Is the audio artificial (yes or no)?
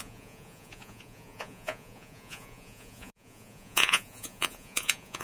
yes